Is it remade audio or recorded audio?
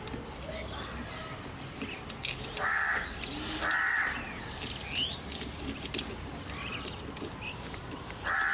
recorded